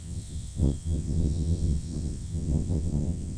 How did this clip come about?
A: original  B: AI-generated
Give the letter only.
B